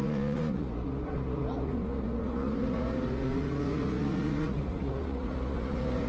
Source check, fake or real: fake